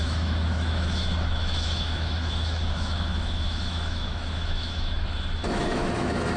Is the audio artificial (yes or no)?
yes